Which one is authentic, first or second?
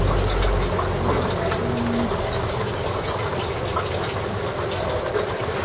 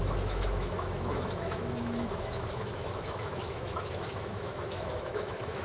first